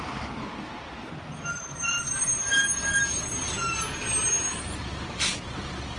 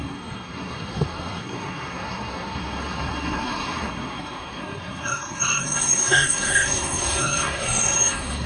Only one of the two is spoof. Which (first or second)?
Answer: second